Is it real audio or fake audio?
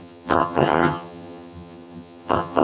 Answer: fake